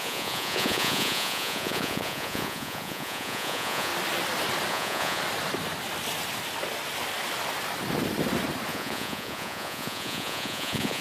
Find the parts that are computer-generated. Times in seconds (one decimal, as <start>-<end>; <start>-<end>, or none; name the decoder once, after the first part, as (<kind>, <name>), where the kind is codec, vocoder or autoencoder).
0.0-3.9 (vocoder, Vocos); 4.7-5.2; 8.7-11.0